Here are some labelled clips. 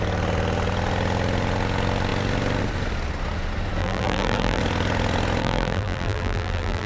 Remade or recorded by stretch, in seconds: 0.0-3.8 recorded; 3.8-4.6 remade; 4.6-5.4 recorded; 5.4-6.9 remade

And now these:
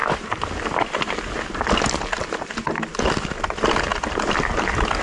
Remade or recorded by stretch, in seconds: 0.0-5.0 recorded